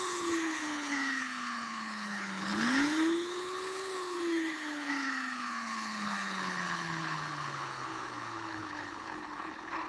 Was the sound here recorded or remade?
remade